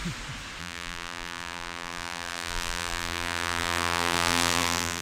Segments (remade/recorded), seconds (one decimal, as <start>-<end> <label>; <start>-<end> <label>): 0.0-0.6 recorded; 0.6-5.0 remade